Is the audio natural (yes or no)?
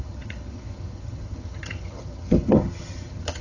no